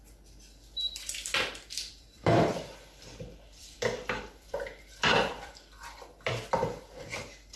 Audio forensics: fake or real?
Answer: fake